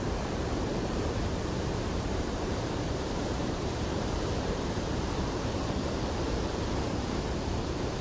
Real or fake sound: fake